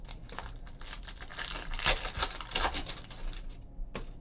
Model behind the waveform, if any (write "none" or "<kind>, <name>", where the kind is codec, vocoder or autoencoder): none